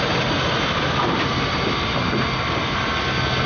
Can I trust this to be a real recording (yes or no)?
yes